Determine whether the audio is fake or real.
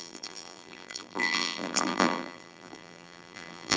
fake